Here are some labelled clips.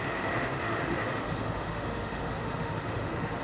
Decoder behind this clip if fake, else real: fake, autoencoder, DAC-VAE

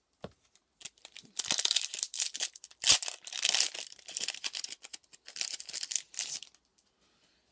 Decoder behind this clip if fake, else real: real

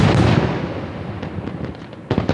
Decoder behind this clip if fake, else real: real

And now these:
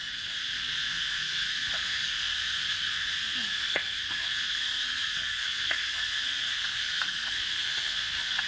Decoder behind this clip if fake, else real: fake, codec, SNAC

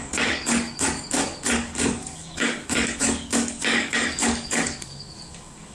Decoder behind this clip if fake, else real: fake, codec, DAC